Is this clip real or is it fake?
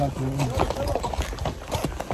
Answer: real